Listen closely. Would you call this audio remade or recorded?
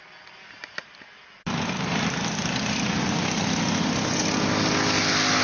recorded